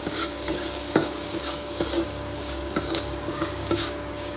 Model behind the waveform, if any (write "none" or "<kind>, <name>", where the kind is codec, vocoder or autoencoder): codec, DAC